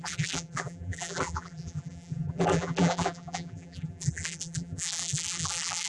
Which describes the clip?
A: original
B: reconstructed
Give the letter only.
B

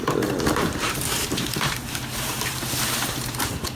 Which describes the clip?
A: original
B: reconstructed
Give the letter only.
B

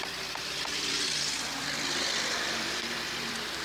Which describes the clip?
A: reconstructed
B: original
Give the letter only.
A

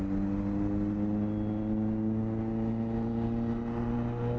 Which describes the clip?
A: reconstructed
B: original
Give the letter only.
B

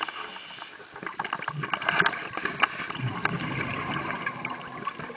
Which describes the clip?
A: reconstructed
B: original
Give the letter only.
B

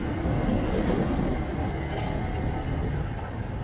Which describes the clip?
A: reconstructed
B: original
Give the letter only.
B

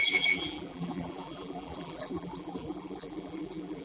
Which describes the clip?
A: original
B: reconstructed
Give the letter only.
B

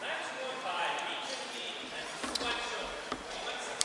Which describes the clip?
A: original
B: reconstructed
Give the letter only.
B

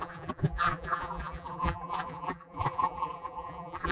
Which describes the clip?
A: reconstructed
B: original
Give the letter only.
A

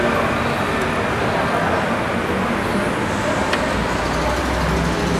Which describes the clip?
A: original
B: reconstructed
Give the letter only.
A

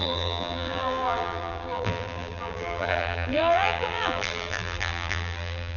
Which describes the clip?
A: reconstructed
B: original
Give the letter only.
A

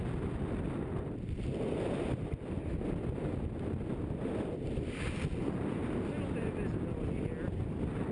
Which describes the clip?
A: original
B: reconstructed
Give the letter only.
B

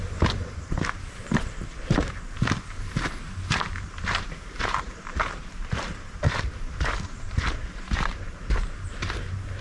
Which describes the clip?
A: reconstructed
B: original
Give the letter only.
A